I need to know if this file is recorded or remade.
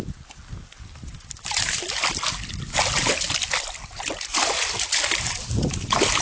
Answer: recorded